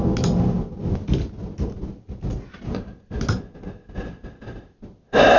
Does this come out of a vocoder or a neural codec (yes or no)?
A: no